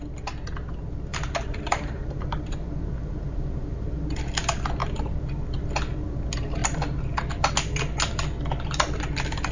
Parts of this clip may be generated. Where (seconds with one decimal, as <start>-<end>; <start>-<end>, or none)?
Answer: 1.1-4.1